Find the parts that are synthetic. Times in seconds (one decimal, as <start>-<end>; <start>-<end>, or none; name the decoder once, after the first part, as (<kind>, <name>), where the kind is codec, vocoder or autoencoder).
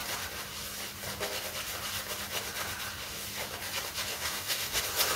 4.1-4.8 (codec, DAC)